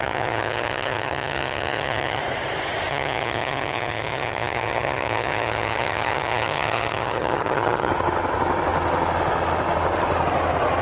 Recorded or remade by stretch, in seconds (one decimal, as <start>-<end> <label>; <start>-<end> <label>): 0.0-2.2 remade; 2.2-2.9 recorded; 2.9-7.9 remade; 7.9-10.8 recorded

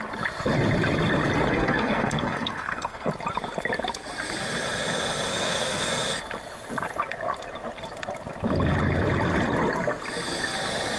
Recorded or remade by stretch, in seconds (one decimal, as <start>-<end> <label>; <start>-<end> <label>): 0.0-1.5 recorded; 1.5-3.1 remade; 3.1-5.3 recorded; 5.3-5.9 remade; 5.9-11.0 recorded